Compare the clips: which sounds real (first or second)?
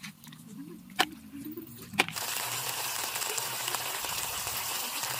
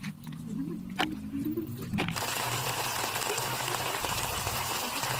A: second